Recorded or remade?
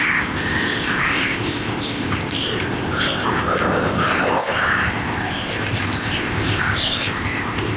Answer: remade